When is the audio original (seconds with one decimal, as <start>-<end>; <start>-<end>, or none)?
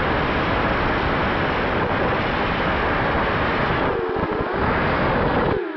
0.0-5.8